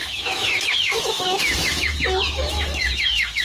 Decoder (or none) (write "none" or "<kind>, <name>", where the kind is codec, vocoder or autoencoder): autoencoder, DAC-VAE